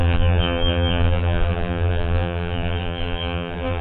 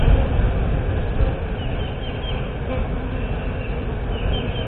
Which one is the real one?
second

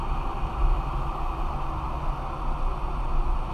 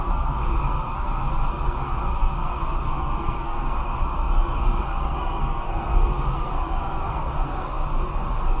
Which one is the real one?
first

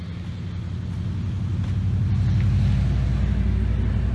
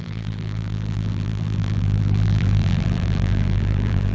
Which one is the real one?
first